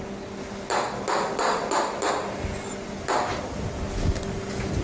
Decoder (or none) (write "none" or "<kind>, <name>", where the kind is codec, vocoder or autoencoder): none